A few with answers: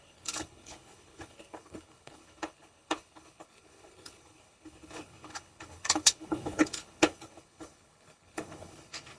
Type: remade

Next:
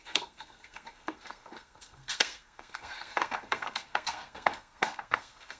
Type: remade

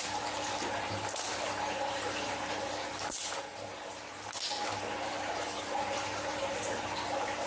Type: recorded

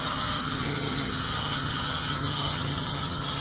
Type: remade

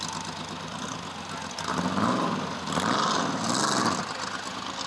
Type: recorded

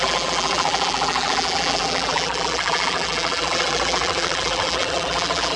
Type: remade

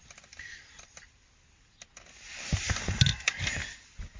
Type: recorded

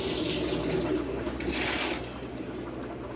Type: recorded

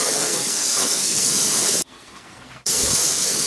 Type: remade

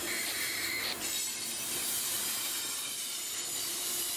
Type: remade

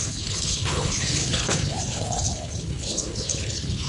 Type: remade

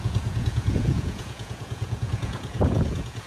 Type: remade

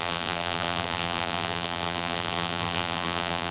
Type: remade